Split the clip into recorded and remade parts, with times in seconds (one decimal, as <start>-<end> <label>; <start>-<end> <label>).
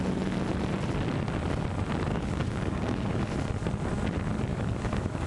0.0-2.1 recorded; 2.1-3.2 remade; 3.2-4.5 recorded; 4.5-5.3 remade